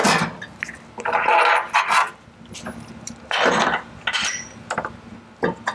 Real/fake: real